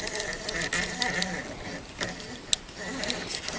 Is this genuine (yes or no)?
yes